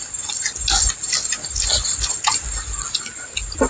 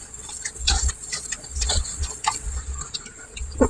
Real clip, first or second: first